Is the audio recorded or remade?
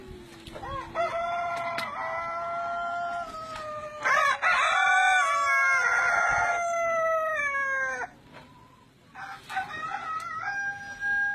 recorded